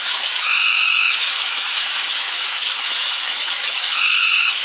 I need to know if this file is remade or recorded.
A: remade